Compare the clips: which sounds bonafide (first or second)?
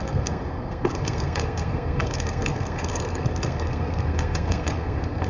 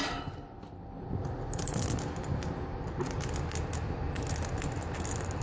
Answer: second